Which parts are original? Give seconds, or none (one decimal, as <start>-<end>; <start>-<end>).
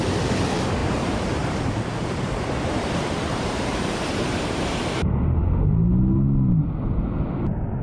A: 0.0-0.8; 5.2-7.8